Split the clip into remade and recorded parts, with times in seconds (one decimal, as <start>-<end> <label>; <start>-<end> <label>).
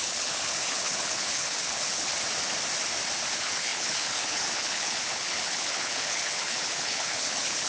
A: 0.0-2.1 remade; 2.1-3.3 recorded; 3.3-7.7 remade